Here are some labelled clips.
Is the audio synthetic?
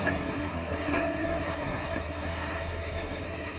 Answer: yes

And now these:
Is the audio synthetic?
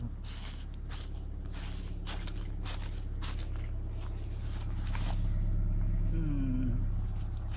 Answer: no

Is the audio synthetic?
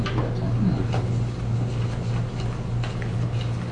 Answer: no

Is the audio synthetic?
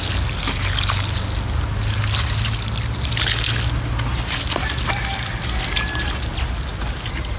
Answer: no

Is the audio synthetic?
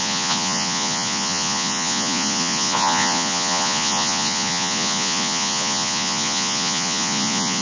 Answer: yes